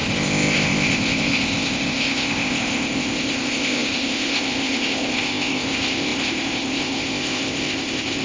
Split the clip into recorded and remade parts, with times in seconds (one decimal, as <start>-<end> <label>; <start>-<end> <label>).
0.0-8.2 remade

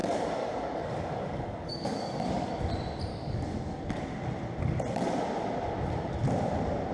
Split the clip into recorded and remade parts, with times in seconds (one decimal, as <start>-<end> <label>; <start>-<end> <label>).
0.0-2.5 remade; 2.5-3.1 recorded; 3.1-3.8 remade; 3.8-6.9 recorded

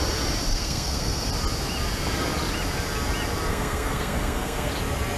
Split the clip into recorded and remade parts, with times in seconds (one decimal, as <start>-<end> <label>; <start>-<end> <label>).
0.0-0.5 recorded; 0.5-1.3 remade; 1.3-3.5 recorded; 3.5-4.7 remade; 4.7-5.2 recorded

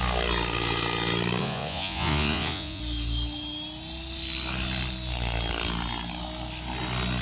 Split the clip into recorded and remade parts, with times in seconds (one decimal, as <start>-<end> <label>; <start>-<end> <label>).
0.0-1.4 recorded; 1.4-2.8 remade; 2.8-7.2 recorded

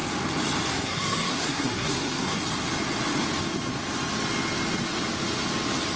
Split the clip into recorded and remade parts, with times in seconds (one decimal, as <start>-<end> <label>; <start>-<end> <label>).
0.0-0.7 recorded; 0.7-2.4 remade; 2.4-6.0 recorded

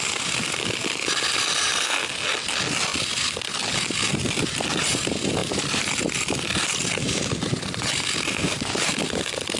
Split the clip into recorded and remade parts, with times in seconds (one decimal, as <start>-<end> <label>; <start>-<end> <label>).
0.0-5.4 recorded; 5.4-6.9 remade; 6.9-9.6 recorded

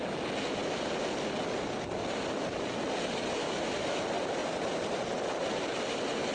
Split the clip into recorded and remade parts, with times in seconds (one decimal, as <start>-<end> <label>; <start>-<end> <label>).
0.0-3.4 recorded; 3.4-4.0 remade; 4.0-6.3 recorded